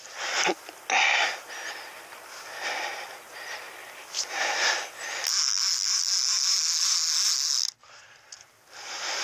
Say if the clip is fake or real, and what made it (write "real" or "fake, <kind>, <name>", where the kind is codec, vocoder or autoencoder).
real